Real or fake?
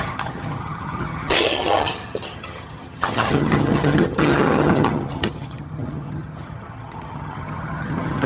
fake